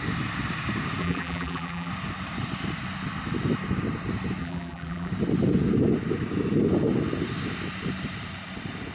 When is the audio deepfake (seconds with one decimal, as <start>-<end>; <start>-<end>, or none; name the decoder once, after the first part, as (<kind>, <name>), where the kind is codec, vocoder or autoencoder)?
1.0-1.9 (vocoder, BigVGAN v2); 4.4-5.1